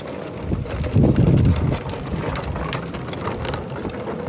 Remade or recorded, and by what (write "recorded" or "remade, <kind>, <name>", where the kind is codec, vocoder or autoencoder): recorded